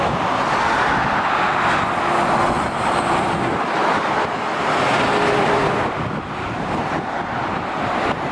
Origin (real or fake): real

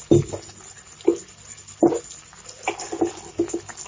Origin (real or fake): real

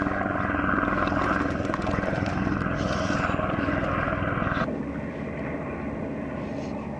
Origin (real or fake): real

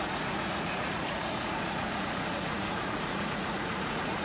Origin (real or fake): fake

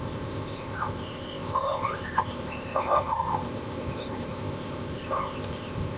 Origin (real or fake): fake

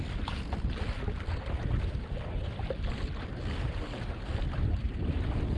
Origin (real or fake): real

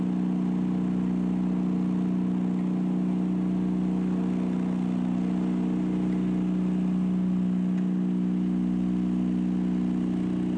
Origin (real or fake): real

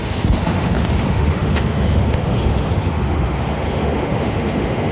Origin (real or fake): fake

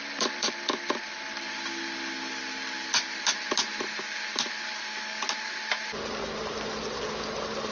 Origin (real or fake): real